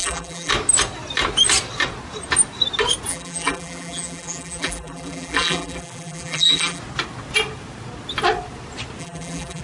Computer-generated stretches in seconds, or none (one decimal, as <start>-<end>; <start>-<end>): 0.0-0.5; 3.1-6.8; 9.0-9.6